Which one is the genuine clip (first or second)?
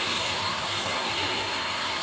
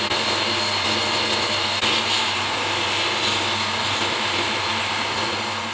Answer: second